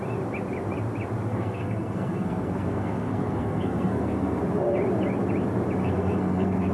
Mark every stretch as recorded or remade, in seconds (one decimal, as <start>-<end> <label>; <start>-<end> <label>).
0.0-1.3 recorded; 1.3-4.4 remade; 4.4-5.8 recorded; 5.8-6.7 remade

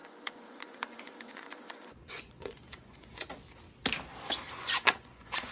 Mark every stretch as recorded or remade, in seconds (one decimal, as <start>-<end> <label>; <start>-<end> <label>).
0.0-3.3 remade; 3.3-4.6 recorded; 4.6-5.5 remade

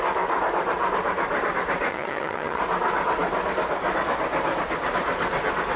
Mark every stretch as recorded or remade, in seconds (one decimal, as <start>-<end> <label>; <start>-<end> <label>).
0.0-1.9 recorded; 1.9-2.6 remade; 2.6-5.8 recorded

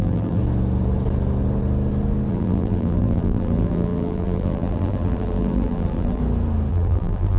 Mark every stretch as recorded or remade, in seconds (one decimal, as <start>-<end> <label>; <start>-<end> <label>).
0.0-0.4 remade; 0.4-2.3 recorded; 2.3-6.2 remade; 6.2-6.7 recorded; 6.7-7.4 remade

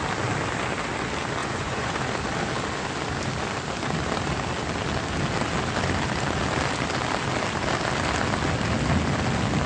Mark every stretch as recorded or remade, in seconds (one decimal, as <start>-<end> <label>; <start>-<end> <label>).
0.0-1.4 recorded; 1.4-2.0 remade; 2.0-9.7 recorded